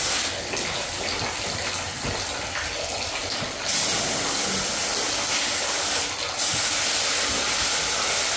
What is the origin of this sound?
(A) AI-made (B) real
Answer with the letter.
B